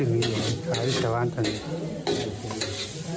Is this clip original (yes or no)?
yes